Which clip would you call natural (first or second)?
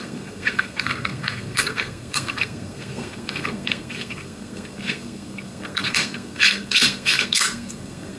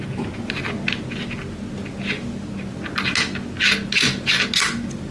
second